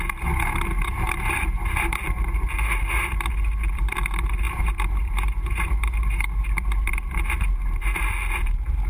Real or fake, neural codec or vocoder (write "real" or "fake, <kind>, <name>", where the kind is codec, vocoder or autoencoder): fake, vocoder, BigVGAN v2